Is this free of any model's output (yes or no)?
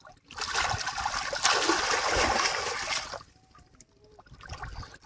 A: yes